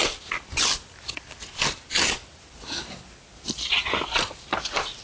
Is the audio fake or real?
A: real